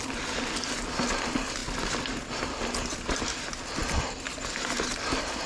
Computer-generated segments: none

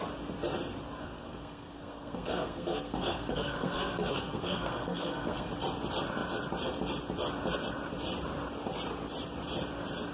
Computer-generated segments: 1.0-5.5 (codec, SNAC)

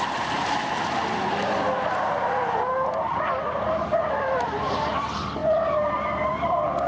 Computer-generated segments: none